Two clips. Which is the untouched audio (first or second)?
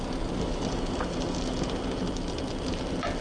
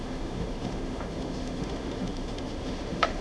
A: first